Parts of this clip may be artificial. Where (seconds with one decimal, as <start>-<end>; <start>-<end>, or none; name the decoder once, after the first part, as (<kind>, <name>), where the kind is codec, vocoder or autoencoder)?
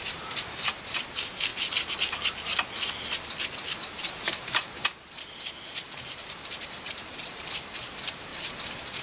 0.0-1.5 (vocoder, BigVGAN v2); 4.0-4.9; 5.5-8.3